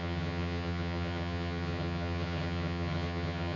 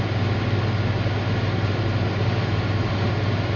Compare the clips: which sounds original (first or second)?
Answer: second